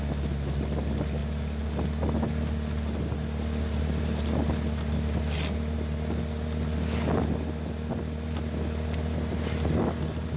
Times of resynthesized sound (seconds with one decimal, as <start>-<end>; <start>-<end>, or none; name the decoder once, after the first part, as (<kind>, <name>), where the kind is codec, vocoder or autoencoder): none